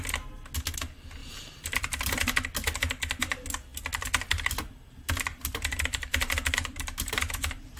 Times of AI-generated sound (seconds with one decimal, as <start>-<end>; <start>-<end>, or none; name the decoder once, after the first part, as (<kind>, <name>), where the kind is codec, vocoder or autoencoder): 1.2-2.1 (vocoder, BigVGAN v2); 5.3-7.8